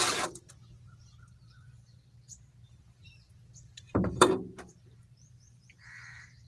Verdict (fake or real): fake